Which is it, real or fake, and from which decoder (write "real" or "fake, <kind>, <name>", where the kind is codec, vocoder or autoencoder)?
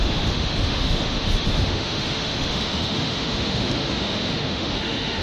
fake, autoencoder, DAC-VAE